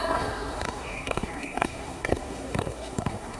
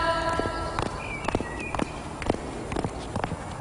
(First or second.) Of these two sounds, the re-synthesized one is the first